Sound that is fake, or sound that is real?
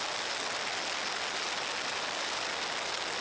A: real